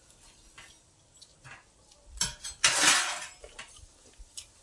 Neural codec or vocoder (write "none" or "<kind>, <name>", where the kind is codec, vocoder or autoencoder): none